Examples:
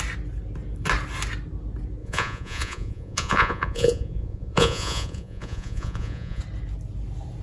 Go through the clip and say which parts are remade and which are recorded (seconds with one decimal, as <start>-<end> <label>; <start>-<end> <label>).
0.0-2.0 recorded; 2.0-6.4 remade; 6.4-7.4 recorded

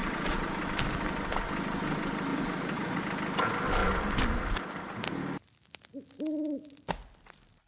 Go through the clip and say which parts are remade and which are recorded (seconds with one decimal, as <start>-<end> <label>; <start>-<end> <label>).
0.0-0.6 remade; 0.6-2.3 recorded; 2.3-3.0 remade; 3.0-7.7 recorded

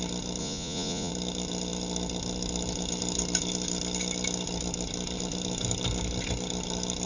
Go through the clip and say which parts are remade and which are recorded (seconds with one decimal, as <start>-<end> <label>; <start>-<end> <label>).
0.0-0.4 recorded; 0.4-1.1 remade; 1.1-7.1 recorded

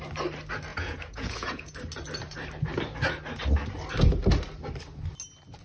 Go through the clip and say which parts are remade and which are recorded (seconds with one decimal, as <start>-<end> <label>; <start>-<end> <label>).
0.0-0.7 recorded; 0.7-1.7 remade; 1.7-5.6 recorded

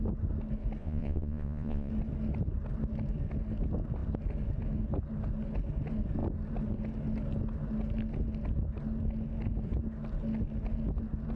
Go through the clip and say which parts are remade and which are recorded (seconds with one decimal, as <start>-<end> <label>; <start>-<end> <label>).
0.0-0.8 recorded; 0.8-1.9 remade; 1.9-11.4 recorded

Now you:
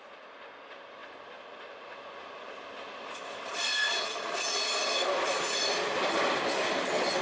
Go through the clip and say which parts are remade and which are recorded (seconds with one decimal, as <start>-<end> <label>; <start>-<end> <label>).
0.0-7.2 recorded

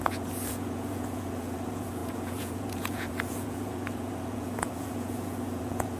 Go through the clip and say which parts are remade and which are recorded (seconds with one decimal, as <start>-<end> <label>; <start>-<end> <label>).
0.0-6.0 remade

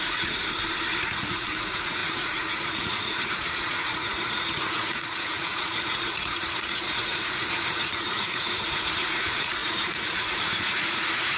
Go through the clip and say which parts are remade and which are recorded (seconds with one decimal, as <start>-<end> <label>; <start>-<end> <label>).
0.0-0.4 remade; 0.4-1.0 recorded; 1.0-11.4 remade